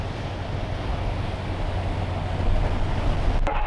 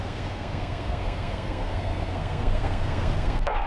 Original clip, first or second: first